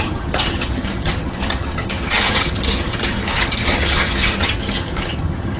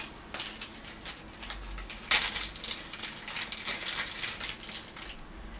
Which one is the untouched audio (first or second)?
second